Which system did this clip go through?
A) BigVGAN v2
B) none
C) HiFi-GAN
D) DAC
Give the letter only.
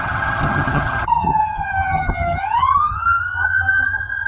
C